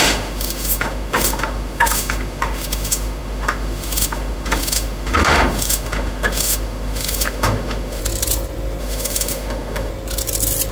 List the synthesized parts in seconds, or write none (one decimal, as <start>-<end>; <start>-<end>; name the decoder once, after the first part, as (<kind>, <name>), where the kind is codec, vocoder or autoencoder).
0.0-8.0 (autoencoder, DAC-VAE); 8.8-9.9